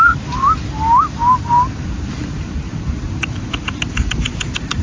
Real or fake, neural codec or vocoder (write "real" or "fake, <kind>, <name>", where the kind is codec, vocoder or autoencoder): real